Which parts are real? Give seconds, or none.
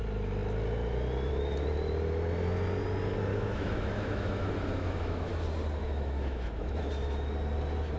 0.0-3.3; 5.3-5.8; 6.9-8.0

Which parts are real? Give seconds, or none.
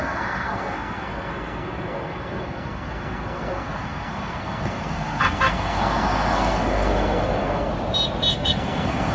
7.7-8.3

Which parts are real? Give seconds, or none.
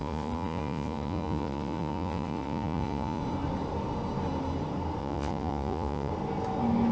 3.2-5.0; 6.1-6.9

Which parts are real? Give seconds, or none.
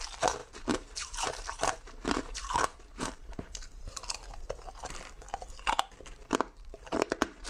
0.0-0.4; 4.9-6.2